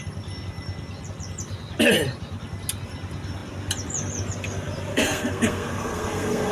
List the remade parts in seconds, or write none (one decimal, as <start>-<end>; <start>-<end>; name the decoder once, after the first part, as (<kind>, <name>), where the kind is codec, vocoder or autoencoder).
4.9-6.5 (codec, SNAC)